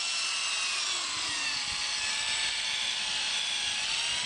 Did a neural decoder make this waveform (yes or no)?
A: no